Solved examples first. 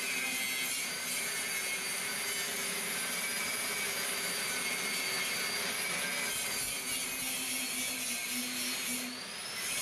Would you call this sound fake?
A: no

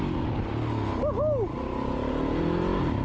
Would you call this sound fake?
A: no